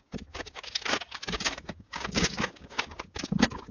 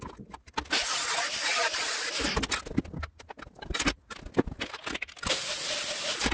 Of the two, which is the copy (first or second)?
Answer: first